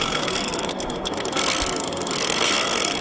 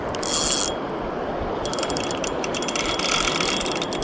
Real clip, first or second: second